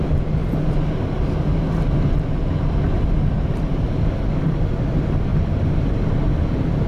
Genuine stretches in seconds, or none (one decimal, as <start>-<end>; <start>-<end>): 0.0-6.9